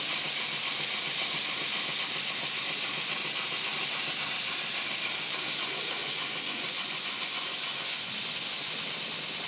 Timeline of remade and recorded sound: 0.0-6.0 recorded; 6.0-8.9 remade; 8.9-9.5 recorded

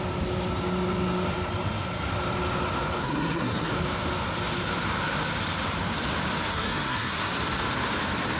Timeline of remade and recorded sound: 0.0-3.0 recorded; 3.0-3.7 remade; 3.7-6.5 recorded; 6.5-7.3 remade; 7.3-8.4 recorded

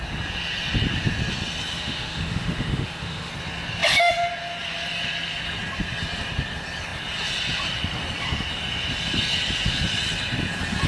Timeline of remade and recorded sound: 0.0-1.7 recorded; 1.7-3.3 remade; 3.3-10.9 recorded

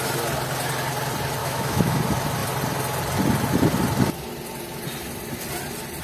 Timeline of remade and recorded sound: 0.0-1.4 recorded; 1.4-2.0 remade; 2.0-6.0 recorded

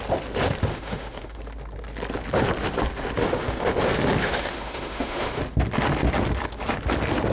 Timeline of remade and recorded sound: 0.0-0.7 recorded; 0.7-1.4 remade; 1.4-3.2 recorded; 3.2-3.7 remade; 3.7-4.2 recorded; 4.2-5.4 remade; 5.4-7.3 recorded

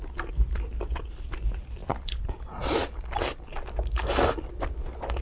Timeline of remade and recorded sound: 0.0-5.2 recorded